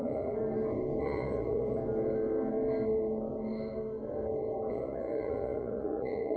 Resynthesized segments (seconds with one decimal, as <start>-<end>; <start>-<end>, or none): 0.0-0.4; 1.0-1.8; 4.7-6.4